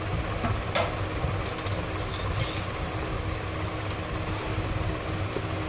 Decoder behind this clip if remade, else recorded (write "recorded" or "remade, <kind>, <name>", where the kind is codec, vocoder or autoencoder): recorded